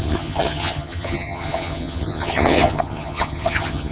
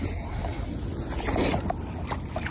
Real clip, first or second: second